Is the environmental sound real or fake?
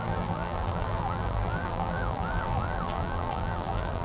fake